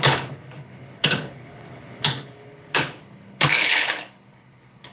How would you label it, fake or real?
fake